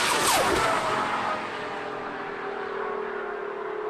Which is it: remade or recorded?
recorded